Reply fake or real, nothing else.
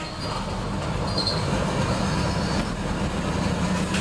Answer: real